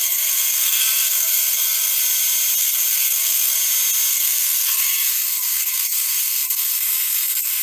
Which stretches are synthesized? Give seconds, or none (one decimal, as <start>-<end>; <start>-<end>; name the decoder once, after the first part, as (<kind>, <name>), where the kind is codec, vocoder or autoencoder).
0.0-2.0 (codec, SNAC); 2.6-3.6; 4.1-7.6